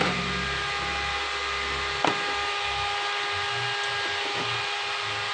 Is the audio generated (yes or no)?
no